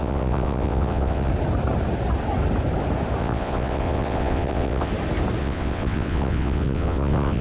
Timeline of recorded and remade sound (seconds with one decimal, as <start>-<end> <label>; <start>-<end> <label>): 0.0-1.3 remade; 1.3-3.2 recorded; 3.2-4.9 remade; 4.9-5.4 recorded; 5.4-7.4 remade